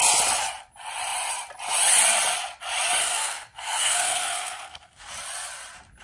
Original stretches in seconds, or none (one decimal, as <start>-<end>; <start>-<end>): 0.0-3.0; 5.1-6.0